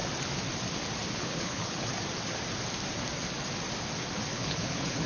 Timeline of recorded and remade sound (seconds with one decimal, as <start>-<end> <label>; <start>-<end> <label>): 0.0-1.1 recorded; 1.1-1.9 remade; 1.9-4.3 recorded; 4.3-5.1 remade